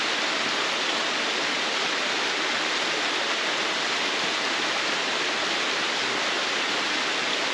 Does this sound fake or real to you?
real